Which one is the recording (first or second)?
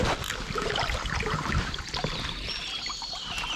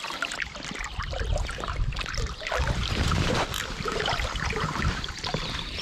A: first